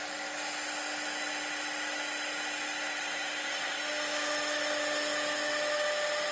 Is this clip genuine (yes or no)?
yes